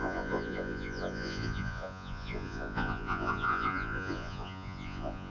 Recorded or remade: remade